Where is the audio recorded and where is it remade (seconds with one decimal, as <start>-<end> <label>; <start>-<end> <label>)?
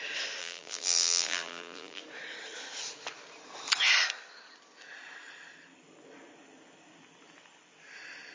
0.0-0.4 recorded; 0.4-2.0 remade; 2.0-8.3 recorded